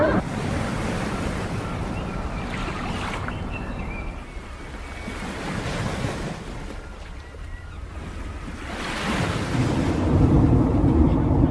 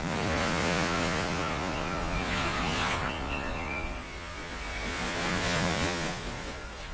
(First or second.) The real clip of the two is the first